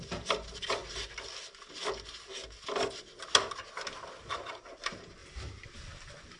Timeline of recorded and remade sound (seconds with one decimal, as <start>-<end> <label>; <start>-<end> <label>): 0.0-0.8 remade; 0.8-4.6 recorded; 4.6-6.4 remade